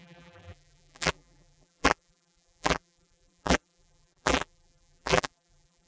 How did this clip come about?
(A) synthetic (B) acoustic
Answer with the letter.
A